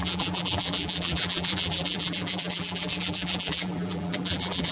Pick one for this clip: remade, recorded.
remade